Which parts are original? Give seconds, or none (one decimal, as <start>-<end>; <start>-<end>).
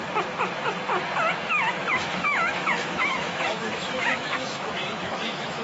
0.0-1.9